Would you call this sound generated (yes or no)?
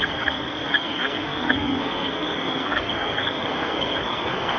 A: yes